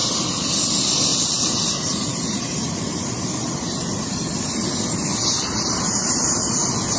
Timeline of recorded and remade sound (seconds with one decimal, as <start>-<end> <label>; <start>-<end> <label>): 0.0-1.1 recorded; 1.1-2.7 remade; 2.7-5.0 recorded; 5.0-6.5 remade; 6.5-7.0 recorded